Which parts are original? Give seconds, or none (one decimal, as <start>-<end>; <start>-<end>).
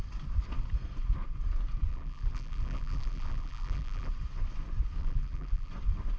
0.0-1.9; 4.1-5.0; 5.7-6.2